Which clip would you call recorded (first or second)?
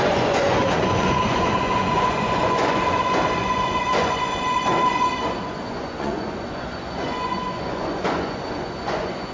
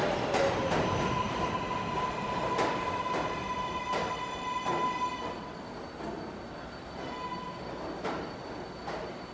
second